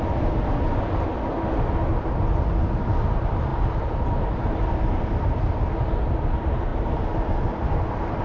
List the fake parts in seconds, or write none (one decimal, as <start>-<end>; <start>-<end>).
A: none